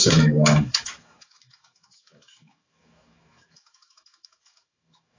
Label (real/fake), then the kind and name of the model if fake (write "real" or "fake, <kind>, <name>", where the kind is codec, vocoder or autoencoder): fake, autoencoder, DAC-VAE